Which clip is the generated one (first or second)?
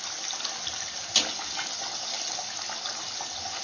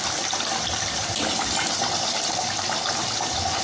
second